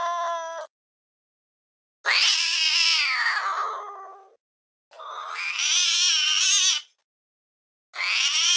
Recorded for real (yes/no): yes